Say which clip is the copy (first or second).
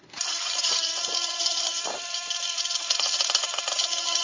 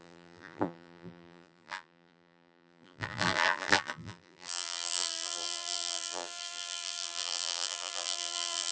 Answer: second